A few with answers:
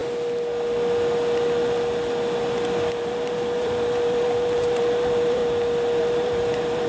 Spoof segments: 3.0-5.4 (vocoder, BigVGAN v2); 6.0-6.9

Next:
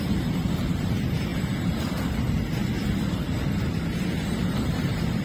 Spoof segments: 0.0-2.6 (vocoder, BigVGAN v2); 4.0-5.2

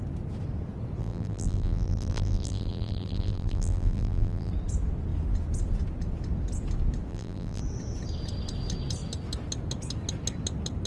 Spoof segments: 1.0-4.5 (vocoder, BigVGAN v2); 7.1-7.6

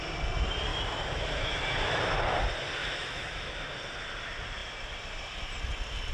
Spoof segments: 0.7-2.1 (autoencoder, DAC-VAE); 2.8-3.5

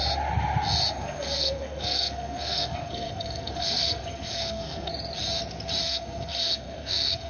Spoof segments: 1.0-4.9 (codec, SNAC); 5.8-7.3

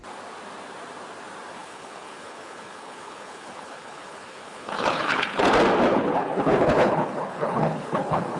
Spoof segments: 1.6-5.5 (codec, HILCodec); 5.9-8.4